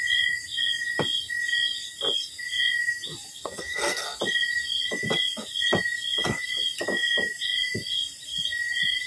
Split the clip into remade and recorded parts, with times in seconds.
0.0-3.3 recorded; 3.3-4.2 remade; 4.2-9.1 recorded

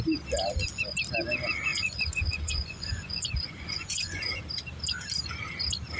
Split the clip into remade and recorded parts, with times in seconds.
0.0-1.7 recorded; 1.7-4.4 remade; 4.4-6.0 recorded

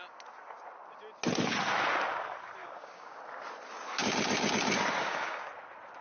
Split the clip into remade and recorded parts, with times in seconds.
0.0-2.6 recorded; 2.6-3.2 remade; 3.2-5.0 recorded; 5.0-5.5 remade; 5.5-6.0 recorded

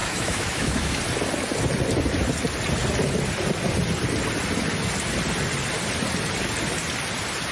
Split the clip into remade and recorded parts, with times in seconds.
0.0-1.0 remade; 1.0-7.5 recorded

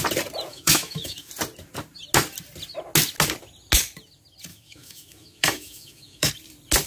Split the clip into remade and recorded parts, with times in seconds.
0.0-0.5 recorded; 0.5-1.3 remade; 1.3-4.5 recorded; 4.5-6.3 remade; 6.3-6.9 recorded

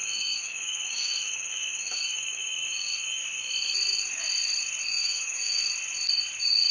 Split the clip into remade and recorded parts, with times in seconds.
0.0-3.2 remade; 3.2-4.9 recorded; 4.9-5.7 remade; 5.7-6.7 recorded